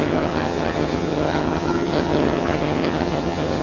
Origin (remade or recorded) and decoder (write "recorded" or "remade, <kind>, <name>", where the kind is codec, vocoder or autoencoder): remade, vocoder, HiFi-GAN